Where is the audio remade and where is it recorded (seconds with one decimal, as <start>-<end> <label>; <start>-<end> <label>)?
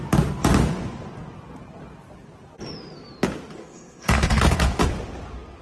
0.0-3.6 recorded; 3.6-4.8 remade; 4.8-5.6 recorded